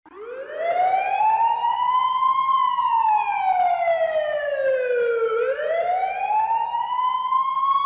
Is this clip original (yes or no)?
yes